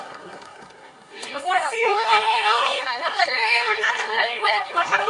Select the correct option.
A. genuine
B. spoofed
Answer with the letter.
B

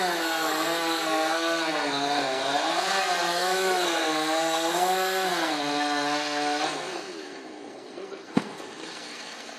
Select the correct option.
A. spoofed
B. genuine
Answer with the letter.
A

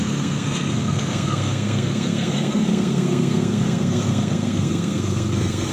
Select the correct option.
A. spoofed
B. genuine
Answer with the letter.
A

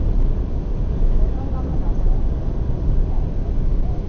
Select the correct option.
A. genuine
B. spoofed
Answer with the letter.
A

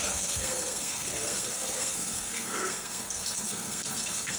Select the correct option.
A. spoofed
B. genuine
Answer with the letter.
A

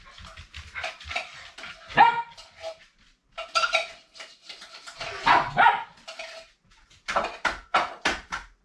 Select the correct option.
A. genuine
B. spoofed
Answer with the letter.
A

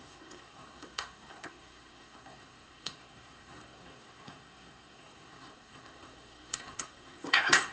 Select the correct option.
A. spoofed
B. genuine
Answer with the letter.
A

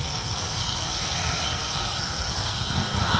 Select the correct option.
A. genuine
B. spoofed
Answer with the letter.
B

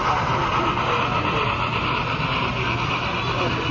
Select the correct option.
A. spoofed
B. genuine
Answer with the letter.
B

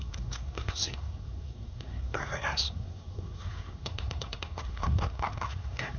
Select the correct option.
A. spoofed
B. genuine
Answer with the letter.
A